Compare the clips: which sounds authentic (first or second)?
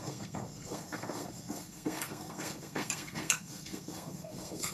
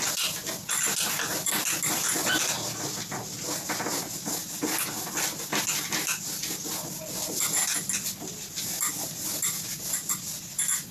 second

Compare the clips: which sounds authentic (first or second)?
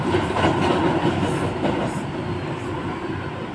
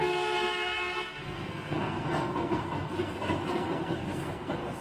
first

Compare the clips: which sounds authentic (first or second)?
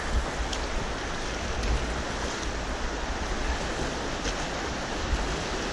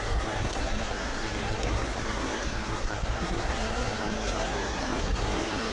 first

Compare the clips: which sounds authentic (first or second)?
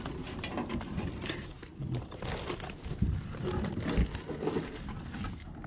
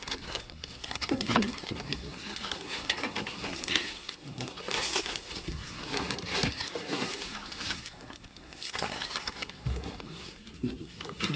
first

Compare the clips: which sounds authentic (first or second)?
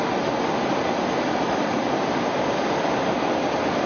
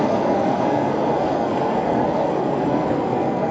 first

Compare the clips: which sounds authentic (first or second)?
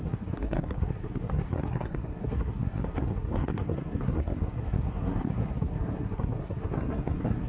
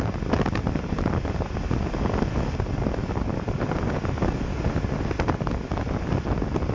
second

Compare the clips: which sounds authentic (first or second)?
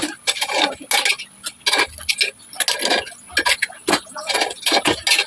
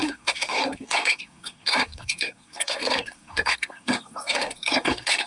first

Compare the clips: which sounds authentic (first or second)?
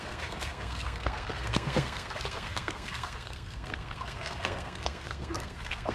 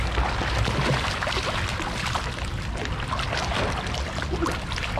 second